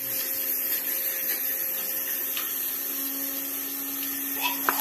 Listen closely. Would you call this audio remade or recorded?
recorded